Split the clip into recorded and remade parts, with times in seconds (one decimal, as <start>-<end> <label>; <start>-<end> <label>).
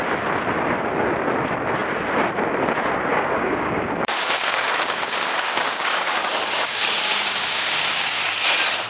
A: 0.0-3.1 recorded; 3.1-8.1 remade; 8.1-8.9 recorded